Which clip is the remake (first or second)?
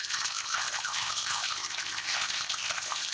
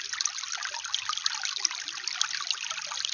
first